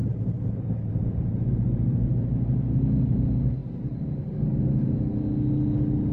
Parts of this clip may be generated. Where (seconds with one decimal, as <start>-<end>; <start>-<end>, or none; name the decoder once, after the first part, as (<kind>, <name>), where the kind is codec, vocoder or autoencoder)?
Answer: 0.0-1.3 (vocoder, BigVGAN v2); 3.6-4.2